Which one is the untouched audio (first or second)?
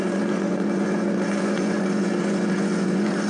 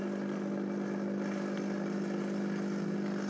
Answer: second